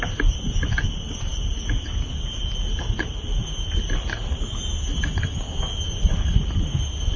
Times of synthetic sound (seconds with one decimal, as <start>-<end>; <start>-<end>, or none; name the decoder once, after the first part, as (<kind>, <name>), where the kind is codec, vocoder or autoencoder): none